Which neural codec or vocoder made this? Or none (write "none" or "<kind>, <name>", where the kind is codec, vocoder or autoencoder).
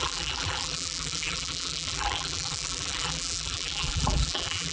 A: vocoder, BigVGAN v2